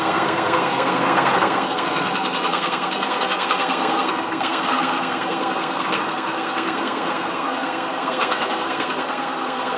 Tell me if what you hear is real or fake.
fake